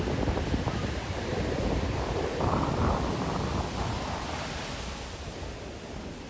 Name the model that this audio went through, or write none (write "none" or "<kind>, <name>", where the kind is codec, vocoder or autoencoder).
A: none